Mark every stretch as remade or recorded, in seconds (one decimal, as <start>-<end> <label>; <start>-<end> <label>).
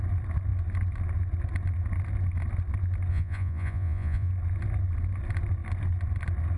0.0-3.1 recorded; 3.1-4.3 remade; 4.3-6.6 recorded